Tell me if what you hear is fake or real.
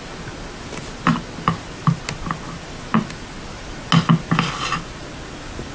real